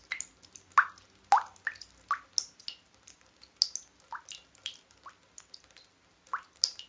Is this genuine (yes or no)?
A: yes